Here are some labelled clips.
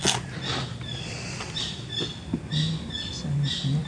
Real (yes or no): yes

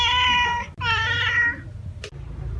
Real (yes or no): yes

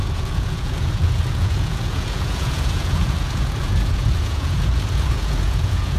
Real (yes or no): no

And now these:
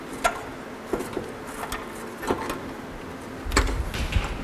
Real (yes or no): yes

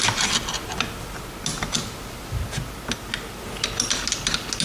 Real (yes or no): yes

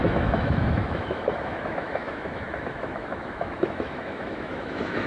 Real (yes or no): no